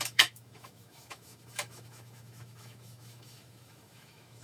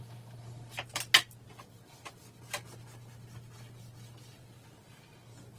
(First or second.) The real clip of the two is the second